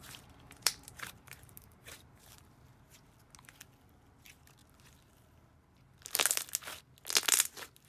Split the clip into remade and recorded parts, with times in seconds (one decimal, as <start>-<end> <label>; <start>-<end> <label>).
0.0-2.4 remade; 2.4-7.9 recorded